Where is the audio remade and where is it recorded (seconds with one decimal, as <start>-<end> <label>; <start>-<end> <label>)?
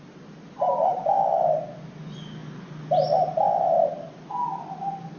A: 0.0-5.2 recorded